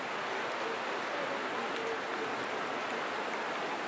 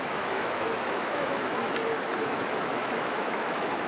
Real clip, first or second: first